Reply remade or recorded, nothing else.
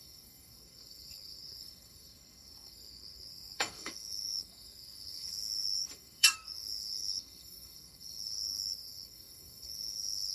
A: remade